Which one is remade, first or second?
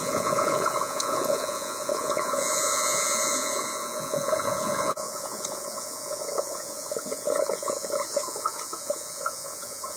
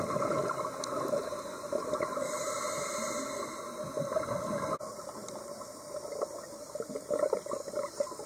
first